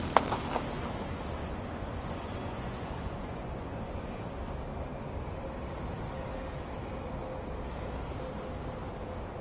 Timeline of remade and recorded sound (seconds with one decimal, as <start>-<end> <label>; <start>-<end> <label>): 0.0-1.4 recorded; 1.4-4.3 remade; 4.3-9.4 recorded